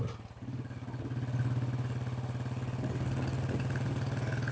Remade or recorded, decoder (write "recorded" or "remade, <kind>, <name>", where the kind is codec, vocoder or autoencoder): recorded